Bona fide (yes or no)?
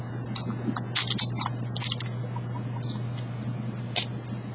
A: yes